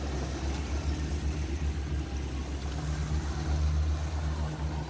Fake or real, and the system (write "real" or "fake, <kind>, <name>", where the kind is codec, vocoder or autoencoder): real